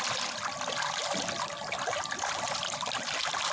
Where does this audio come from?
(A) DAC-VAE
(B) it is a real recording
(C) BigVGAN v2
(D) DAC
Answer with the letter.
B